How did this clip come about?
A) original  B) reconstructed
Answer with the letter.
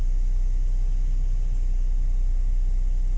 A